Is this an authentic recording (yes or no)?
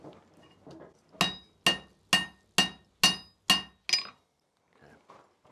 yes